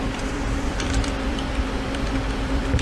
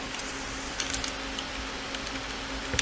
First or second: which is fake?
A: first